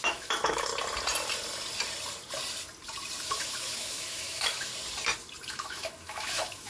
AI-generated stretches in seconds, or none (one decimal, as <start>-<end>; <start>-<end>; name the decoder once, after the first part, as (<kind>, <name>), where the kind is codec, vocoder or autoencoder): 0.0-0.7 (autoencoder, DAC-VAE); 3.2-4.7; 5.5-6.7